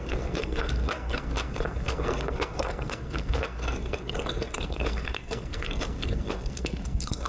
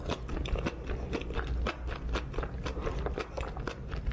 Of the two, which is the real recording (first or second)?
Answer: second